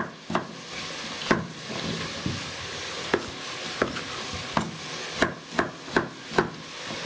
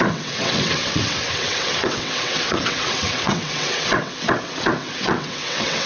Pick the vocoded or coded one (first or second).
second